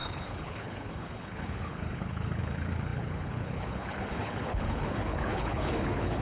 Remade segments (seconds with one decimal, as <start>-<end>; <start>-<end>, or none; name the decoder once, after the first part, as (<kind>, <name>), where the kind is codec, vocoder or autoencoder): 0.0-6.2 (codec, HILCodec)